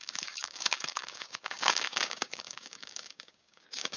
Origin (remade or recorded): remade